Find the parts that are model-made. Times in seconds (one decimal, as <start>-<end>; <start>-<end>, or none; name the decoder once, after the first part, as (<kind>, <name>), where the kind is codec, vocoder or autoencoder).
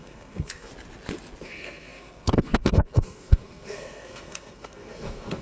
0.0-0.7 (codec, SNAC); 1.4-5.4